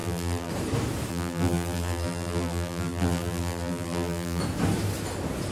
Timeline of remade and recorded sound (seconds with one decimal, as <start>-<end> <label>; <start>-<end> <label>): 0.0-0.5 remade; 0.5-1.1 recorded; 1.1-4.4 remade; 4.4-5.5 recorded